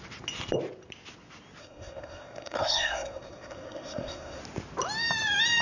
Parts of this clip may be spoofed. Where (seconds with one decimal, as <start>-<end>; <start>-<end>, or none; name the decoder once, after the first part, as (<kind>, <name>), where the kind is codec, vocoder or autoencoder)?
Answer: 1.6-4.4 (codec, SNAC)